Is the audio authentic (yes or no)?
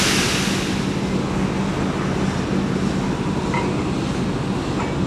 yes